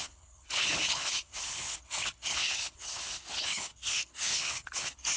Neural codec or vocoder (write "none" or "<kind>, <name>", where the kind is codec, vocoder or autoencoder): codec, HILCodec